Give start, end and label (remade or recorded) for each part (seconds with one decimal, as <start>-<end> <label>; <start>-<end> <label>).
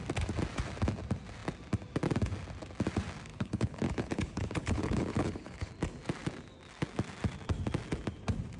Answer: 0.0-3.3 recorded; 3.3-5.7 remade; 5.7-8.6 recorded